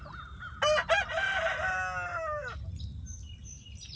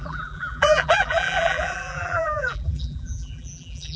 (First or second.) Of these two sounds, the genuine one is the first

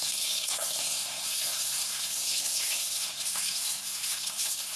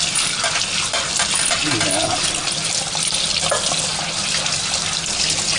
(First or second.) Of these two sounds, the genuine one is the second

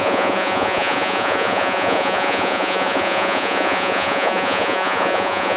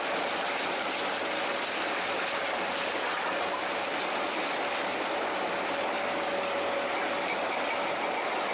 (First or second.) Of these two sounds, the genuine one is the second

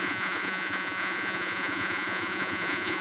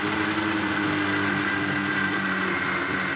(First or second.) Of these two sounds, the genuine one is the second